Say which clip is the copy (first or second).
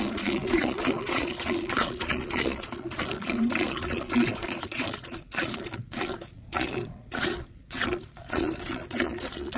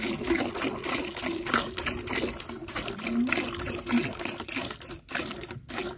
first